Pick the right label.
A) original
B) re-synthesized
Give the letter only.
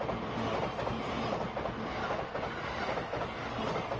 A